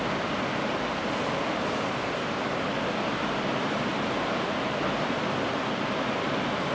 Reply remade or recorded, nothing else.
recorded